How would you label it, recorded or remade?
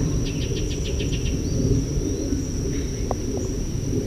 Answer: recorded